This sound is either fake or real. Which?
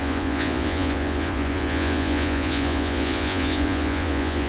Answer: fake